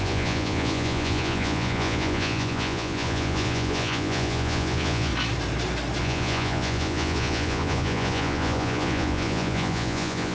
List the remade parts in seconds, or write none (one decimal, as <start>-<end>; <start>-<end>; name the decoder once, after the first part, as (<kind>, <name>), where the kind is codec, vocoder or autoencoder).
0.0-5.1 (vocoder, Vocos); 6.0-10.3